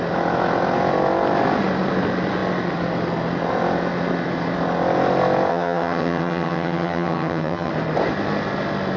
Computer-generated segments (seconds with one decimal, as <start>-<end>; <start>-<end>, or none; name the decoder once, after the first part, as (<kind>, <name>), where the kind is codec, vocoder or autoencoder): 5.5-7.7 (vocoder, HiFi-GAN)